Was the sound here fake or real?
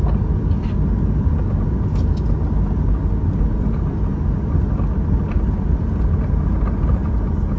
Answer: real